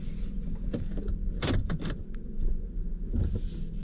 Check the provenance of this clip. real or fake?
real